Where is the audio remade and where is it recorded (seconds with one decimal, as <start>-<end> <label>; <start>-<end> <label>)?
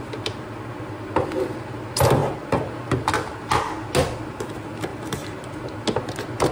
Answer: 0.0-4.9 recorded; 4.9-5.5 remade; 5.5-6.5 recorded